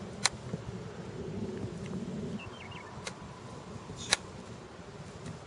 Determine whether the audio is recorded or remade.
recorded